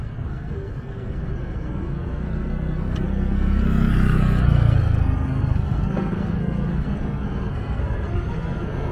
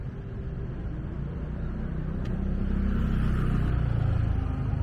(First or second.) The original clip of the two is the second